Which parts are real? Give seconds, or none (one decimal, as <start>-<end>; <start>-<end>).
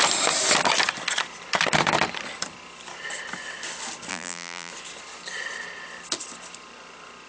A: 0.0-4.1; 4.7-7.3